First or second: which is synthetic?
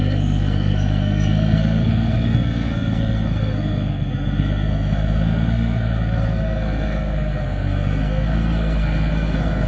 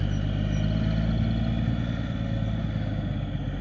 first